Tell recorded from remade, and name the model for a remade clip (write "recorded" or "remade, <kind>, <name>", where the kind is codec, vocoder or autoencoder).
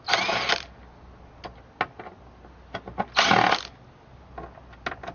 recorded